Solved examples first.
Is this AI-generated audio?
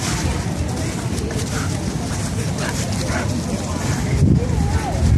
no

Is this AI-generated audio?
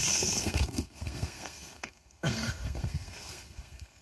yes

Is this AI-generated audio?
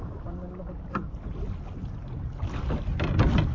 no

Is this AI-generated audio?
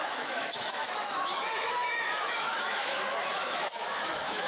yes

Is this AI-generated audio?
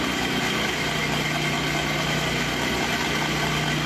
no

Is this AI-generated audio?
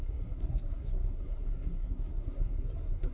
yes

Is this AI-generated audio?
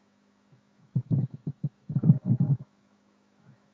yes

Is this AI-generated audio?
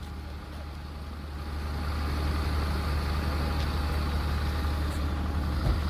no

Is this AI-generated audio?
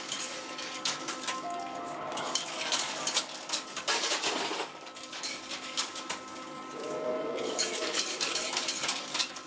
yes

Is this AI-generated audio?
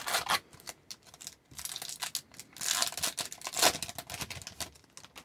no